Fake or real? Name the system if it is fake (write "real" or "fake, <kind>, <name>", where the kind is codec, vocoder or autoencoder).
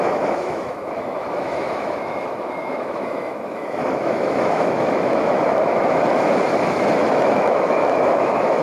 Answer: fake, autoencoder, DAC-VAE